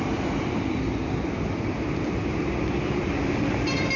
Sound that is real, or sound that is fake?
fake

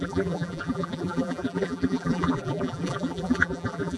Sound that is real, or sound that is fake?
fake